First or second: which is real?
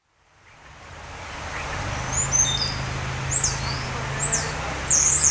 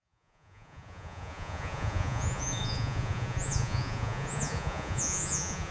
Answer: first